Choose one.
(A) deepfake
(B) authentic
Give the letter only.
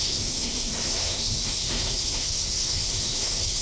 A